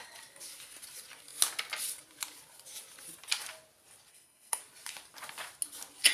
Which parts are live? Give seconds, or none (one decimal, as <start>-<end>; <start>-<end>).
0.0-4.1; 4.6-6.1